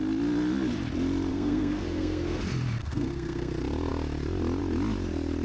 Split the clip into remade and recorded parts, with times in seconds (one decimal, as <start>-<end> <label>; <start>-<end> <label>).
0.0-1.3 recorded; 1.3-2.4 remade; 2.4-2.8 recorded; 2.8-3.5 remade; 3.5-5.4 recorded